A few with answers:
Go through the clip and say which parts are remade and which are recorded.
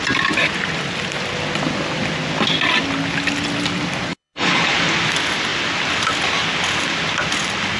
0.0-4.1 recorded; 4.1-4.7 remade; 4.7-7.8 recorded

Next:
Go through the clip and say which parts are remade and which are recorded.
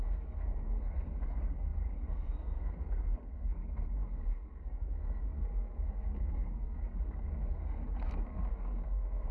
0.0-9.3 remade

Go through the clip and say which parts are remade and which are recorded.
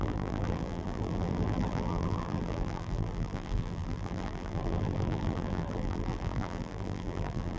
0.0-7.6 remade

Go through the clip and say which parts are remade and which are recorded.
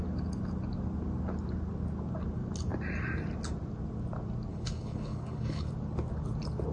0.0-4.5 recorded; 4.5-5.7 remade; 5.7-6.7 recorded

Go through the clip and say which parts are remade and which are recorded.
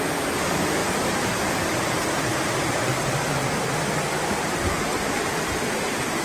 0.0-6.2 recorded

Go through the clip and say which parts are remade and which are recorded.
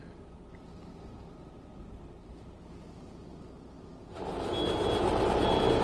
0.0-5.8 recorded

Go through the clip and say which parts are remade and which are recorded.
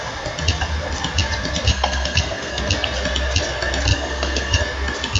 0.0-1.7 recorded; 1.7-2.6 remade; 2.6-3.9 recorded; 3.9-4.6 remade; 4.6-5.2 recorded